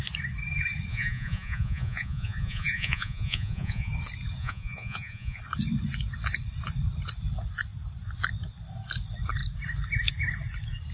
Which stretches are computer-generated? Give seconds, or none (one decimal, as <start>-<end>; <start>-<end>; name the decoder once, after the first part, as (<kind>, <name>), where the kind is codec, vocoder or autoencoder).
0.9-3.9 (vocoder, Vocos); 4.4-5.4